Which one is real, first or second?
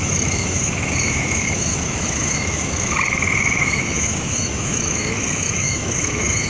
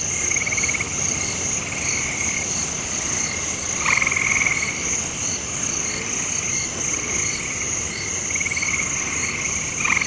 second